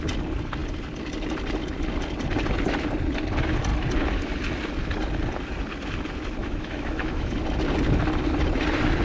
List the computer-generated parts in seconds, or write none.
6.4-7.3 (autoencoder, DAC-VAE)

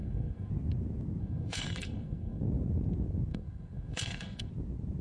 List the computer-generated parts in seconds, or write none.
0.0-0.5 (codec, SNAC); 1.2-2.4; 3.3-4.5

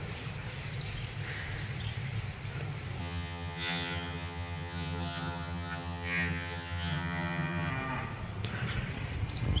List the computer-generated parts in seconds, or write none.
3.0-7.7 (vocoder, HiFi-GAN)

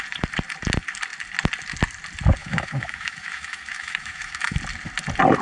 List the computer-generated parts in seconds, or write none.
2.4-4.6 (autoencoder, DAC-VAE)